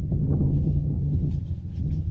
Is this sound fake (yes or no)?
yes